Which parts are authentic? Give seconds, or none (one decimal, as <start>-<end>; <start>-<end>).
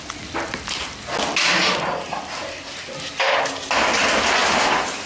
0.0-5.1